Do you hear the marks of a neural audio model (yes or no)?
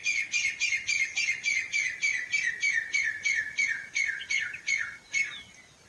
no